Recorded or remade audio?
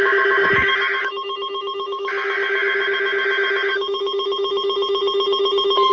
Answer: remade